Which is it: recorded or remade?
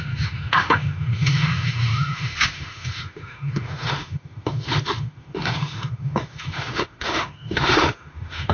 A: remade